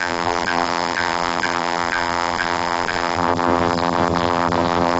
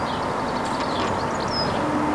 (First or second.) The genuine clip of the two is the second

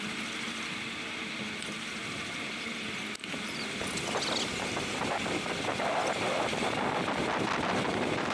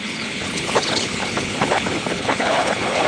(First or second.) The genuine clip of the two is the first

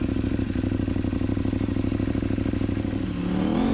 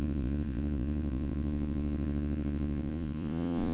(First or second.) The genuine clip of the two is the first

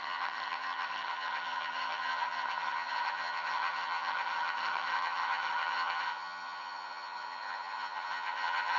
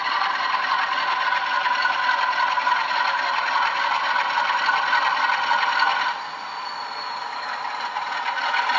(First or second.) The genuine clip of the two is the second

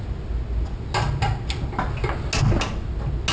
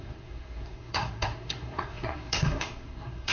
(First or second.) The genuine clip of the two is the first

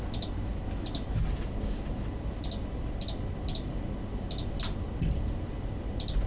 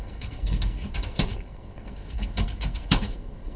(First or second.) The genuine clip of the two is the first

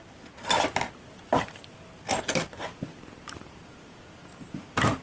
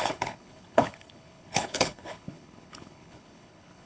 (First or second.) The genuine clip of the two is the first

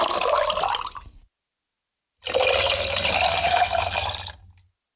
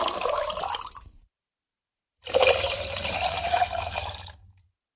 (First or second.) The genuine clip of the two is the first